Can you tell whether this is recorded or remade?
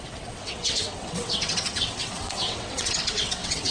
remade